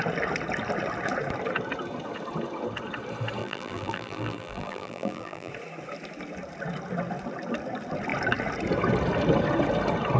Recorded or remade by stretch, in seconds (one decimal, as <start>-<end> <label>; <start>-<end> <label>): 0.0-3.4 recorded; 3.4-5.5 remade; 5.5-10.2 recorded